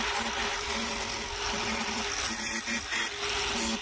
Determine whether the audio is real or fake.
real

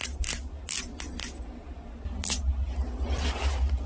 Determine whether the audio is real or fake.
real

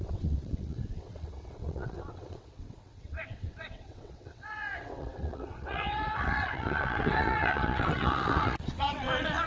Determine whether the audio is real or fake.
fake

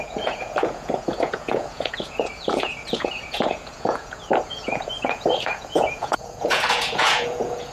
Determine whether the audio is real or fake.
fake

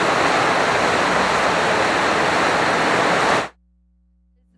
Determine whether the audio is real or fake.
real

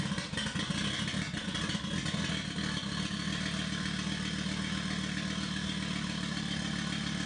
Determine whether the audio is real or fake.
real